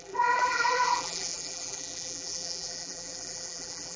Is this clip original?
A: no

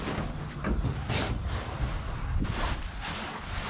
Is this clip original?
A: yes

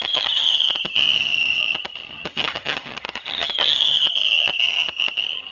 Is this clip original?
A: no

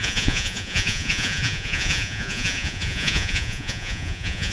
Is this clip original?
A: no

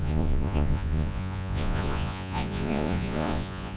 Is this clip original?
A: no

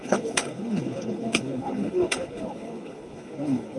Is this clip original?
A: no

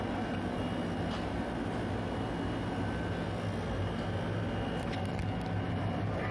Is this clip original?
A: yes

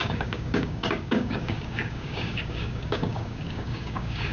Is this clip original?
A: no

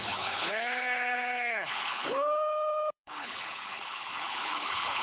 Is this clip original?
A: no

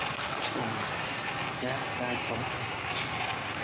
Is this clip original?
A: yes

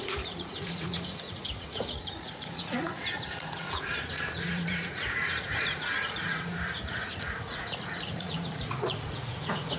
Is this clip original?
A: no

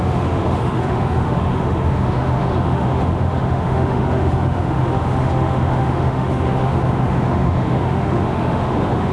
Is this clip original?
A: no